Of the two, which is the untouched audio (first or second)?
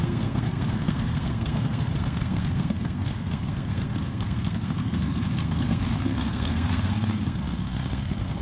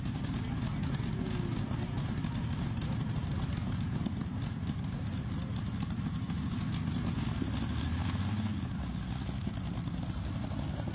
second